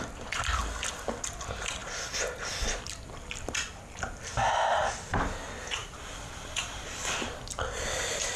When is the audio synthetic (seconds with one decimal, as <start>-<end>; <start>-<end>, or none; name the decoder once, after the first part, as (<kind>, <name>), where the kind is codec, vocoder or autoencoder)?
0.0-0.6 (vocoder, BigVGAN v2); 1.2-1.8; 2.5-8.4